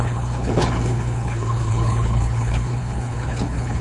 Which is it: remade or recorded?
remade